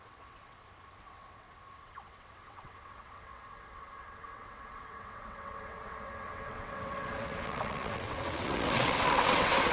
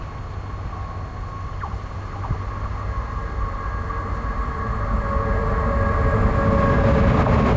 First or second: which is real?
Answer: second